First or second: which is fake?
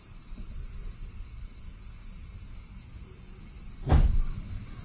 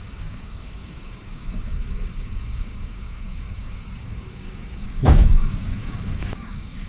second